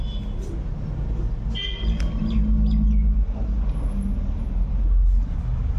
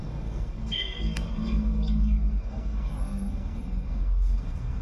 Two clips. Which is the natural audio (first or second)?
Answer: first